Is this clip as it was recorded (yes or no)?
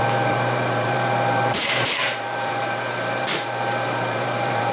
no